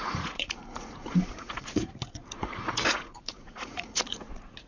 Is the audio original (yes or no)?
no